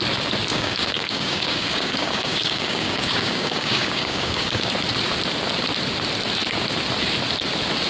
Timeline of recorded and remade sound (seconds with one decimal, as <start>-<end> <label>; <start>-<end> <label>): 0.0-0.5 recorded; 0.5-4.7 remade; 4.7-7.9 recorded